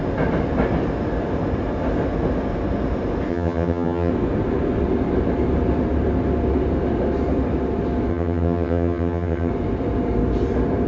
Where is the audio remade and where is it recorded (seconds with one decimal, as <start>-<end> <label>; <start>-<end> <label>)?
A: 0.0-3.3 recorded; 3.3-4.1 remade; 4.1-8.1 recorded; 8.1-9.5 remade; 9.5-10.9 recorded